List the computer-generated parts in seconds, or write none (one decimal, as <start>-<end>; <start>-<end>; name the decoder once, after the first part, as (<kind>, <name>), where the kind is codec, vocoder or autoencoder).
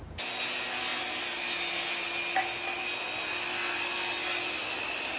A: none